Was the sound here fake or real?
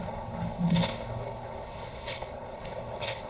fake